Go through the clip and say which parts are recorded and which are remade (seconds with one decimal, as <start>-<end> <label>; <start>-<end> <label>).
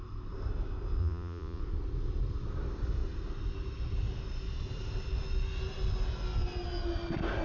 0.0-1.0 recorded; 1.0-1.6 remade; 1.6-7.4 recorded